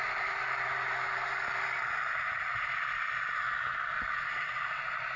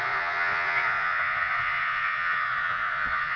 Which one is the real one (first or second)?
first